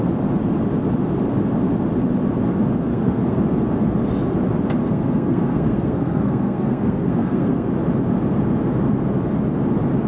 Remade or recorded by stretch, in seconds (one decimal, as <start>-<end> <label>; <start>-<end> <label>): 0.0-2.9 recorded; 2.9-3.4 remade; 3.4-4.8 recorded; 4.8-7.7 remade; 7.7-10.1 recorded